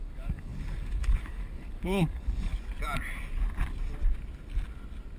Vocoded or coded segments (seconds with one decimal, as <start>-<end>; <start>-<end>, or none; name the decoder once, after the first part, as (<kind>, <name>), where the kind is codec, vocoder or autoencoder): 0.0-2.5 (codec, DAC)

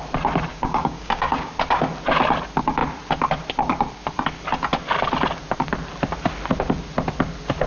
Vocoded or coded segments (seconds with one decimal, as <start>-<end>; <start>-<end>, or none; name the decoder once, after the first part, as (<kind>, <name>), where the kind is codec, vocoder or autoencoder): 0.5-1.5 (codec, DAC)

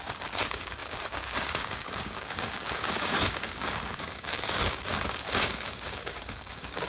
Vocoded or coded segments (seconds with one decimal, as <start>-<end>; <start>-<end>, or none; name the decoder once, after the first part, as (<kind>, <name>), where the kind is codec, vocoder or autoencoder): 0.0-6.9 (codec, DAC)

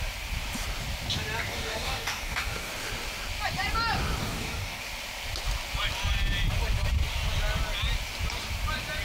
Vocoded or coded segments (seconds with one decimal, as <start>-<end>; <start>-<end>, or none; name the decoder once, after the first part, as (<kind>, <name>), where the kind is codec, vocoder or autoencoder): 1.5-2.7 (codec, DAC); 4.2-4.8